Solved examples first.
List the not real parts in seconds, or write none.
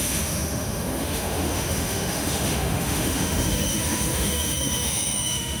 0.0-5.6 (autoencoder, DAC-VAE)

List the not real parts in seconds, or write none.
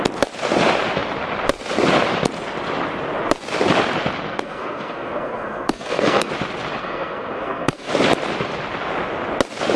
4.3-6.3 (codec, SNAC); 6.8-7.9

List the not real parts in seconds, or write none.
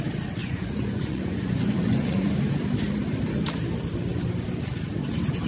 0.4-2.5 (vocoder, Vocos)